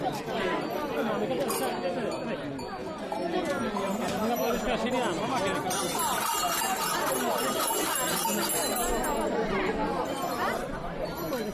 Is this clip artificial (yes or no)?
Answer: no